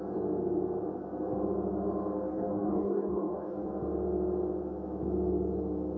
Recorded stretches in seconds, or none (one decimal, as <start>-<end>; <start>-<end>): 0.0-2.3; 3.7-6.0